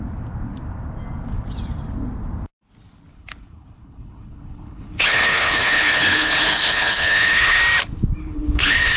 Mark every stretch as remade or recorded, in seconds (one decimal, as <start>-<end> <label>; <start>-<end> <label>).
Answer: 0.0-3.1 recorded; 3.1-7.6 remade; 7.6-8.2 recorded; 8.2-9.0 remade